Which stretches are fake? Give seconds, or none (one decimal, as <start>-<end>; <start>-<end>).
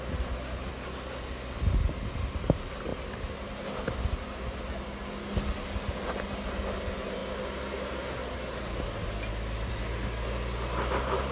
none